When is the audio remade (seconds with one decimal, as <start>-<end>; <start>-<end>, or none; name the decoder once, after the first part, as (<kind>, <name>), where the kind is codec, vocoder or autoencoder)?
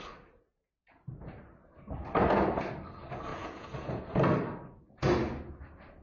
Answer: 3.3-4.0 (vocoder, Vocos)